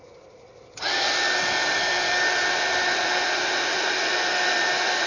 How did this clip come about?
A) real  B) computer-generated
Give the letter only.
A